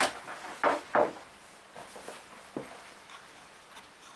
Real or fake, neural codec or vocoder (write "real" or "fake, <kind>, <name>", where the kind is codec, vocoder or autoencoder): real